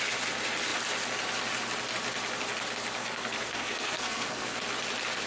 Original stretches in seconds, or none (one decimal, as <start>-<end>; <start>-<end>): 0.0-3.0; 4.6-5.3